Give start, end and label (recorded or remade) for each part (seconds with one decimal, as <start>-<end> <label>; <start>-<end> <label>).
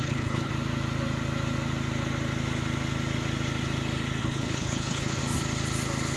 0.0-0.5 remade; 0.5-4.2 recorded; 4.2-5.2 remade; 5.2-6.2 recorded